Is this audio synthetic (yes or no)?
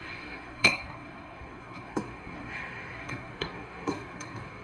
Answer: yes